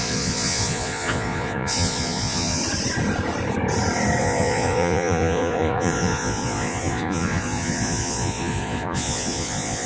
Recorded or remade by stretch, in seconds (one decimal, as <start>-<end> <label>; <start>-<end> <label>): 0.0-2.6 remade; 2.6-4.2 recorded; 4.2-9.9 remade